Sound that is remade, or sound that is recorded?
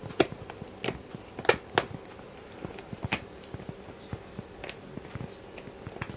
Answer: recorded